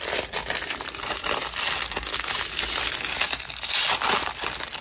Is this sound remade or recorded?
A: recorded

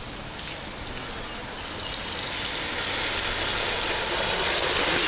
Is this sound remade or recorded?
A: recorded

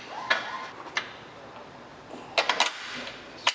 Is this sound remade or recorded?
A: recorded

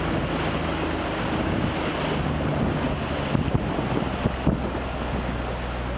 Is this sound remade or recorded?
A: recorded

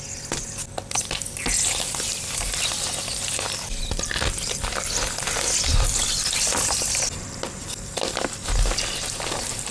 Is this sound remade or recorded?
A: recorded